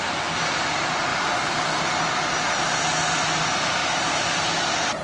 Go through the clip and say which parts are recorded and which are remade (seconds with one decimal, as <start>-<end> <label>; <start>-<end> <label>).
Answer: 0.0-1.1 recorded; 1.1-2.2 remade; 2.2-3.8 recorded; 3.8-5.0 remade